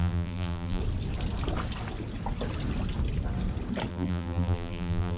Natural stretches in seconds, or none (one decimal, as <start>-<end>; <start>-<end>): 0.8-3.9